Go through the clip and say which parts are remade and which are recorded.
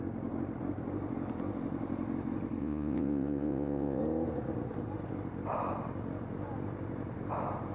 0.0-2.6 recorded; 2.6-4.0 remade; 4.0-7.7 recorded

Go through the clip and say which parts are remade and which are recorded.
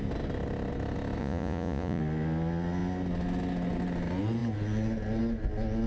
0.0-1.2 recorded; 1.2-2.0 remade; 2.0-5.9 recorded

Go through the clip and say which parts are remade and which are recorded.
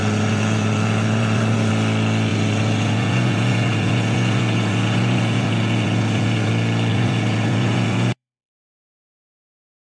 0.0-1.7 remade; 1.7-2.3 recorded; 2.3-6.5 remade; 6.5-6.9 recorded; 6.9-9.2 remade; 9.2-10.0 recorded